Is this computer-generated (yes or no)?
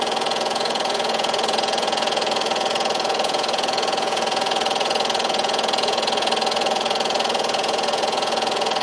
yes